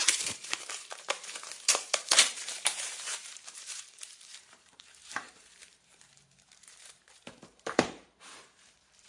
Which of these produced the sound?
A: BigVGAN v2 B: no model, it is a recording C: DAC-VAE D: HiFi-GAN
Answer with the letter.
A